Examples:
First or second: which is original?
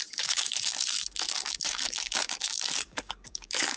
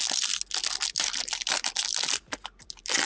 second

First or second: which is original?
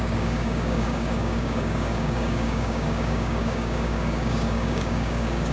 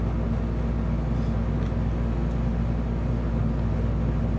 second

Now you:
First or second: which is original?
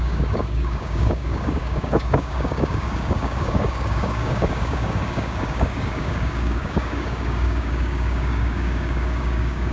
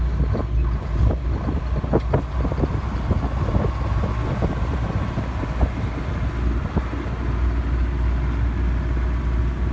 second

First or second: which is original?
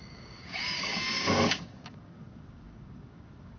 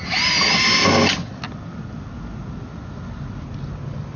second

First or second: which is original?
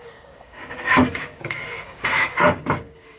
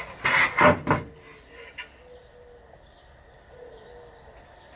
second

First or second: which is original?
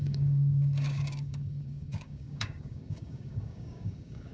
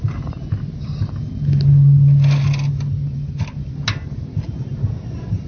second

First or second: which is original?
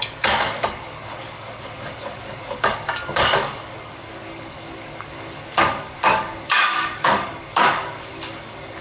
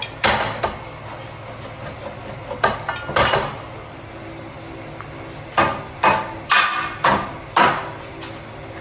second